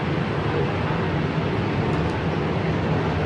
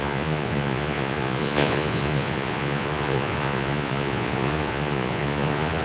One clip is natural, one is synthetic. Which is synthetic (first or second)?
second